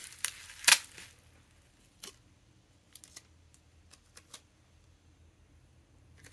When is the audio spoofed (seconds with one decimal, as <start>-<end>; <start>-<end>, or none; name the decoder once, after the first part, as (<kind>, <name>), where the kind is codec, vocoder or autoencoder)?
none